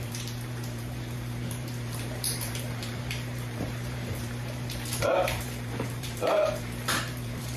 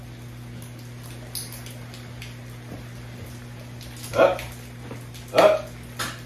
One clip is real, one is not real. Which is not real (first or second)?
first